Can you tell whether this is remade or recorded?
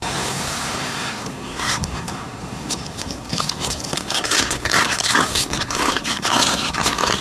remade